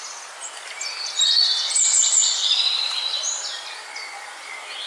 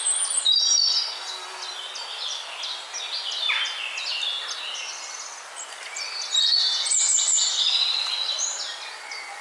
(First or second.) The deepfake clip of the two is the first